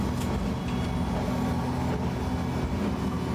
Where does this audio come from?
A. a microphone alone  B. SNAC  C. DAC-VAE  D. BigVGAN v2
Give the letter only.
A